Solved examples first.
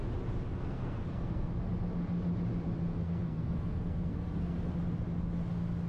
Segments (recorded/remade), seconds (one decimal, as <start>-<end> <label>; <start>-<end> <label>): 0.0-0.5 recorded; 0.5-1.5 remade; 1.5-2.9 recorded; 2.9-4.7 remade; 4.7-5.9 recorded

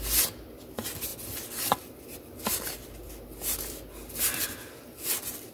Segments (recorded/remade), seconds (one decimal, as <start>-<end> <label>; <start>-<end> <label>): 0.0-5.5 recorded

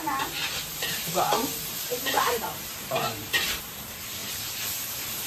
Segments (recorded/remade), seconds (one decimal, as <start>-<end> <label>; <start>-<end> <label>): 0.0-0.4 recorded; 0.4-3.6 remade; 3.6-4.2 recorded; 4.2-5.3 remade